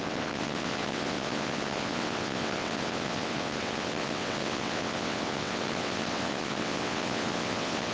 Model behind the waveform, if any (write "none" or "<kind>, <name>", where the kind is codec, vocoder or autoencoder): vocoder, WaveNeXt